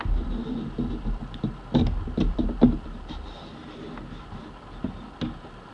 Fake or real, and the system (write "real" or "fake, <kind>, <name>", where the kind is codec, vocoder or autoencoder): real